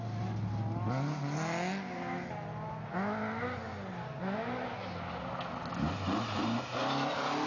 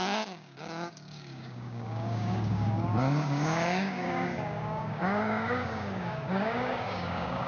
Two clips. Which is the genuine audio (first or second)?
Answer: first